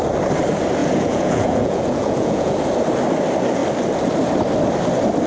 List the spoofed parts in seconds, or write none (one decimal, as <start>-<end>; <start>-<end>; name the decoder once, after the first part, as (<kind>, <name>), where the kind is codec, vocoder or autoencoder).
0.8-2.5 (vocoder, Vocos)